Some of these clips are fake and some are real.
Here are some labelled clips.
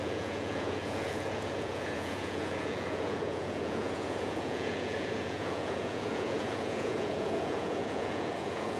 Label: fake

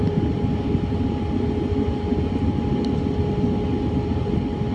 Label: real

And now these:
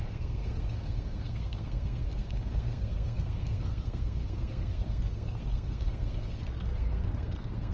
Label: fake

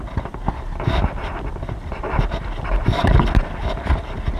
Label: real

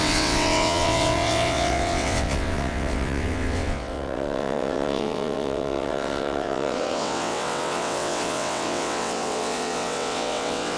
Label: fake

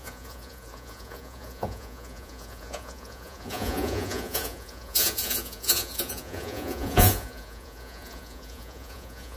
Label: fake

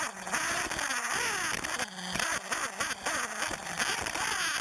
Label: real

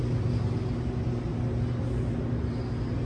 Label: real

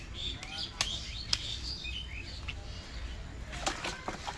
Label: real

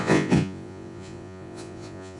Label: fake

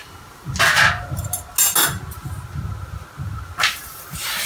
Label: real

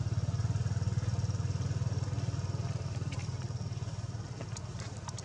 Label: real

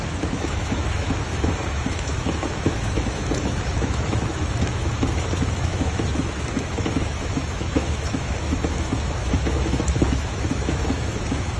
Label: fake